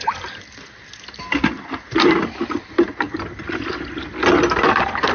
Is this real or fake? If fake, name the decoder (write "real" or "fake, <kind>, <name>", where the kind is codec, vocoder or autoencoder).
real